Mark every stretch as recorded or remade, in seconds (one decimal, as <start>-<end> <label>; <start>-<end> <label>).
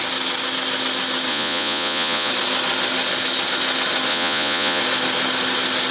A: 0.0-1.3 recorded; 1.3-2.3 remade; 2.3-4.1 recorded; 4.1-4.8 remade; 4.8-5.9 recorded